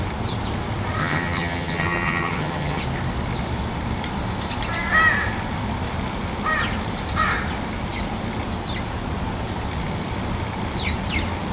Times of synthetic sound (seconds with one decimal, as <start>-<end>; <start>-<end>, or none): 1.0-2.8